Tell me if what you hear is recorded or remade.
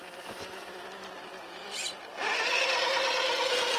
recorded